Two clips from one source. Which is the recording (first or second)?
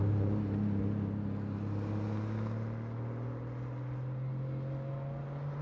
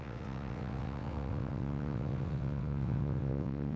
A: first